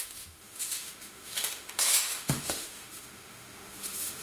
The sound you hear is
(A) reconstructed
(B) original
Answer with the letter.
A